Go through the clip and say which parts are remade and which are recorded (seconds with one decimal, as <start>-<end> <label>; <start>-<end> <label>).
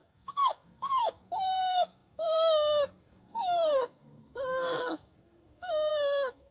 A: 0.0-6.5 remade